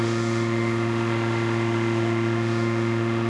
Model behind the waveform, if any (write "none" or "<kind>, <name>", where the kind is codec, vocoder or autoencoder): autoencoder, DAC-VAE